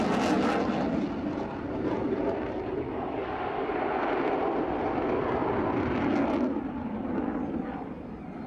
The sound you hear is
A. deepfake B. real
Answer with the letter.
B